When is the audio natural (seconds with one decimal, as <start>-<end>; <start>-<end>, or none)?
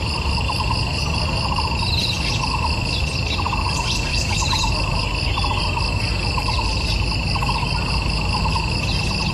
0.0-9.3